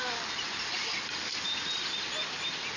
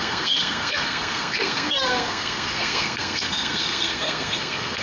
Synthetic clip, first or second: second